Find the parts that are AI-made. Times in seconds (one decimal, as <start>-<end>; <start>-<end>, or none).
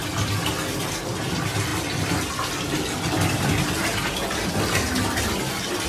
none